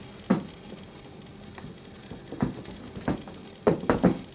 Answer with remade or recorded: recorded